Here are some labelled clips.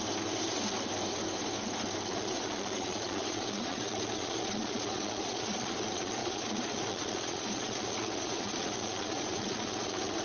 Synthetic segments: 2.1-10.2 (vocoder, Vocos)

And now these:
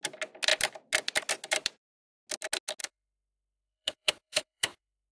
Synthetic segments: 2.8-5.1 (autoencoder, DAC-VAE)

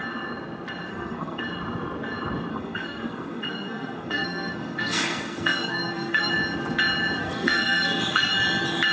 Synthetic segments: 0.9-1.4 (codec, SNAC); 2.5-6.3; 7.2-8.3

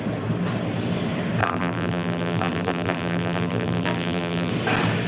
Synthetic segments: 1.4-4.5 (vocoder, BigVGAN v2)